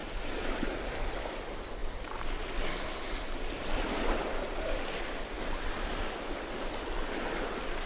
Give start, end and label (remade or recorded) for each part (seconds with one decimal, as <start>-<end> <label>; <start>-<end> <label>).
0.0-7.9 recorded